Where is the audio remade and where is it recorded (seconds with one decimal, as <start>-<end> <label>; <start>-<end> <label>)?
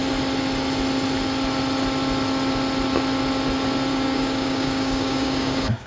0.0-3.9 recorded; 3.9-5.9 remade